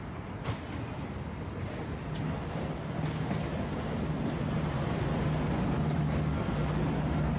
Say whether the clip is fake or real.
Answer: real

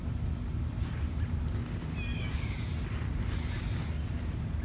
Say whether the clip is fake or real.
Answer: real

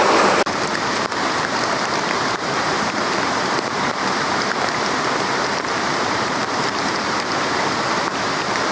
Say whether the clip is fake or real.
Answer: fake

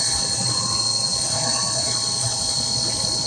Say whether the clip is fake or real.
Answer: fake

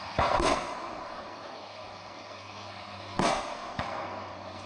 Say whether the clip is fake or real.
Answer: fake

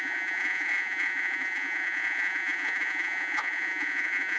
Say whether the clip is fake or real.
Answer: fake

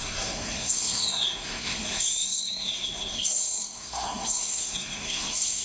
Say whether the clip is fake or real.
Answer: fake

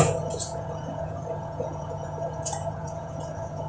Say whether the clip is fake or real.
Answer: fake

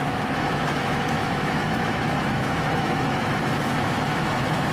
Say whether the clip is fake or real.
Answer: fake